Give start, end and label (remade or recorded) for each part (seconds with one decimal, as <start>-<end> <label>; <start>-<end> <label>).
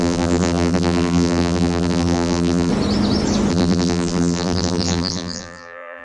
0.0-2.7 remade; 2.7-3.5 recorded; 3.5-6.0 remade